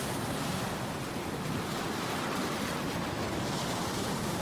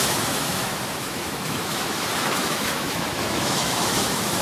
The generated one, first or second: second